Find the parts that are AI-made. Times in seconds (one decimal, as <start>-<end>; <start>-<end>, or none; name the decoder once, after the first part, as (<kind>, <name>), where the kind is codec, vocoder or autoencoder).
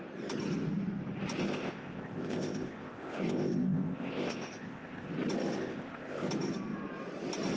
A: 1.5-5.1 (codec, ZipCodec); 5.6-6.3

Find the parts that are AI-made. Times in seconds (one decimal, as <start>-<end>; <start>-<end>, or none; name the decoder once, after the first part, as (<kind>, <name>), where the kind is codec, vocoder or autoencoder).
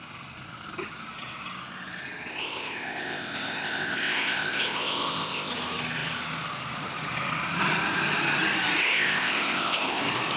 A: 2.3-5.5 (codec, ZipCodec); 8.8-10.0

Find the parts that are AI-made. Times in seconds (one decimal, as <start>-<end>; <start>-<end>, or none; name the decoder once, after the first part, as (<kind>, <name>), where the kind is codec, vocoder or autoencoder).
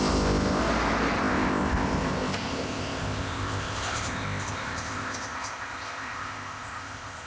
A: 0.0-0.6 (codec, ZipCodec); 1.2-7.3